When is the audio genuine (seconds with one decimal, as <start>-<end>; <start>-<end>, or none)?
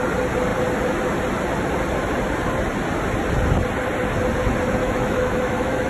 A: 0.0-4.8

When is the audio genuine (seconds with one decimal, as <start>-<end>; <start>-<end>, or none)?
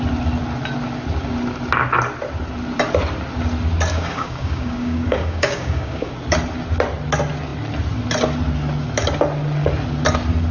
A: 0.0-3.9; 6.1-10.5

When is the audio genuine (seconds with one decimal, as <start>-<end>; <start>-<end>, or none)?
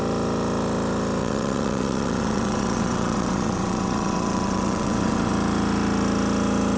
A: 0.0-1.2; 5.3-6.8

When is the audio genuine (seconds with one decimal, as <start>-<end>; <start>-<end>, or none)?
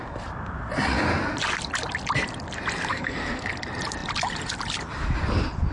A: 0.0-2.9; 3.5-5.7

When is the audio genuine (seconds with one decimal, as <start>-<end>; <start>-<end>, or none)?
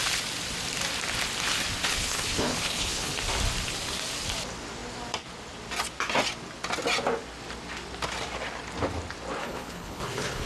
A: 0.0-1.9; 3.1-9.4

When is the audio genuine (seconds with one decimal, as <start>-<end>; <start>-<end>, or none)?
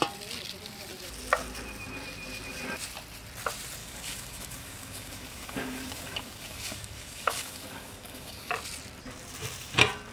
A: 0.0-3.8; 8.5-10.1